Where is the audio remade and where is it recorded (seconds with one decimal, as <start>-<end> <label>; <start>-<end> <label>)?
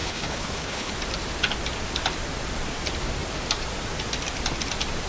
0.0-0.9 remade; 0.9-5.1 recorded